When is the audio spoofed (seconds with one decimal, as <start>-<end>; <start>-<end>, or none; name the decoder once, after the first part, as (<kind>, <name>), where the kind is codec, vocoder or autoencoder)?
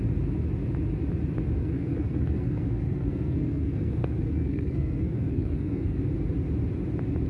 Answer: 1.6-6.0 (codec, SNAC)